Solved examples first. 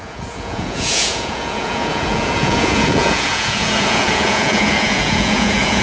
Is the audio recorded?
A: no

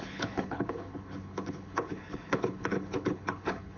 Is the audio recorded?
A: no